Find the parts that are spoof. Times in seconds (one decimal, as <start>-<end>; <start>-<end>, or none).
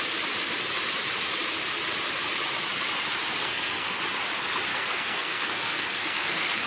3.4-4.0; 4.7-6.7